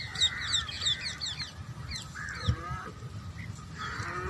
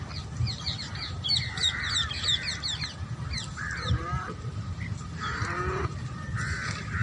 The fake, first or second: second